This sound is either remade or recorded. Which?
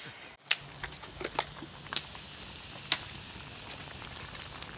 recorded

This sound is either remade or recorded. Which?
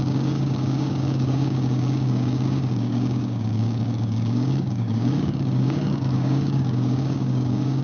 remade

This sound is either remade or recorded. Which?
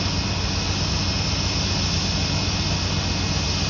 recorded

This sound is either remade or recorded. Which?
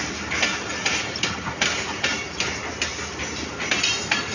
recorded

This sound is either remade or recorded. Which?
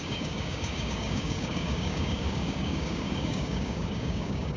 remade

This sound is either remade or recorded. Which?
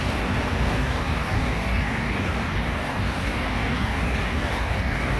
remade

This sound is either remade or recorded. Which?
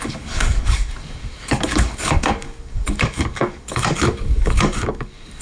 remade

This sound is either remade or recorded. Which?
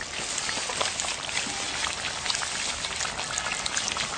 recorded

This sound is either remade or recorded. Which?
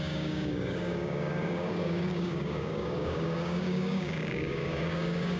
remade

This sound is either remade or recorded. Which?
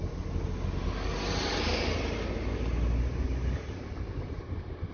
recorded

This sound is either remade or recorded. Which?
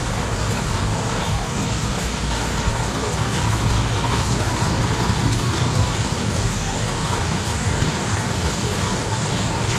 remade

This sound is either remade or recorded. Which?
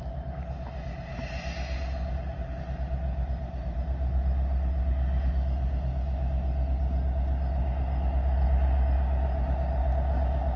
recorded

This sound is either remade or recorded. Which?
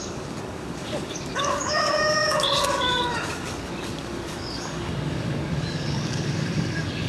remade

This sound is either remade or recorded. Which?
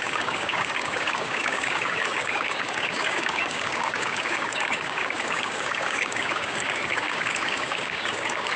remade